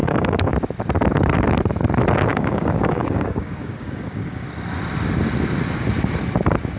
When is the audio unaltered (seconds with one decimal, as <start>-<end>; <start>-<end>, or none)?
0.5-2.3; 4.5-6.8